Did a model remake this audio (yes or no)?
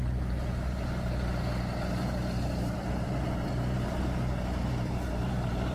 yes